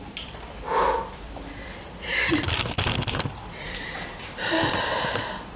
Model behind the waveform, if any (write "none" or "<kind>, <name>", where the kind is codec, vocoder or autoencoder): vocoder, BigVGAN v2